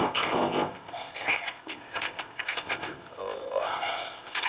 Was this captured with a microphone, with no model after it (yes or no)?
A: no